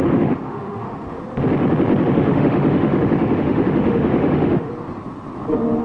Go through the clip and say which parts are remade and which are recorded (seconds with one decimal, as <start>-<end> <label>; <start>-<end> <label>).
0.0-1.2 remade; 1.2-2.1 recorded; 2.1-4.7 remade; 4.7-5.8 recorded